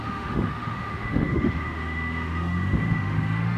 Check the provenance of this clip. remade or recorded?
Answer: remade